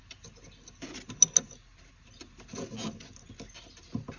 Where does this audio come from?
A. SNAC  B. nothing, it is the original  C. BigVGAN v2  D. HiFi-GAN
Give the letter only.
B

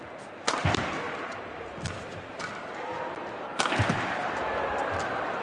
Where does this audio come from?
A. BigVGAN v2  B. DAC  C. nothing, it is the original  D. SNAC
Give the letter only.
C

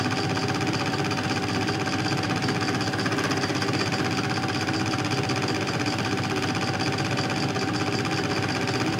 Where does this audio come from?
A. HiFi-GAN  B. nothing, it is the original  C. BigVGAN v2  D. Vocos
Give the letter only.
B